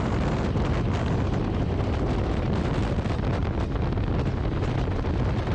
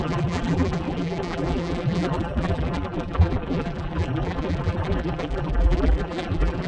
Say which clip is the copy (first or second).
second